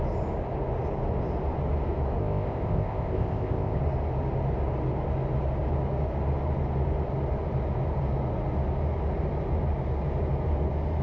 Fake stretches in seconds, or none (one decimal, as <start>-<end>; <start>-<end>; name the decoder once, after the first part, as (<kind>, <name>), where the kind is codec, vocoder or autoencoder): 2.2-3.8 (codec, ZipCodec)